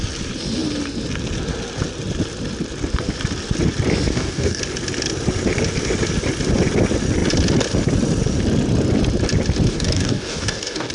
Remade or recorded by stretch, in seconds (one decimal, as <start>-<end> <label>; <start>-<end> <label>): 0.0-4.1 recorded; 4.1-4.6 remade; 4.6-9.7 recorded; 9.7-10.9 remade